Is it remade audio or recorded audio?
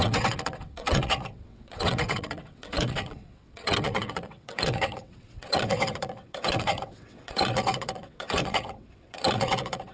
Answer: remade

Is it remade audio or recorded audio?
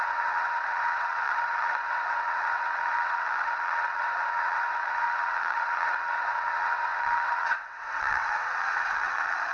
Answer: remade